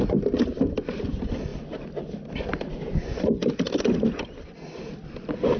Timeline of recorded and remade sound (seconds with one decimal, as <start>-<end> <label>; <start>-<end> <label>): 0.0-5.6 recorded